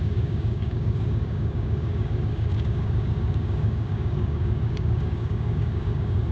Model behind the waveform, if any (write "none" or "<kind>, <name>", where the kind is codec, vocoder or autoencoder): codec, DAC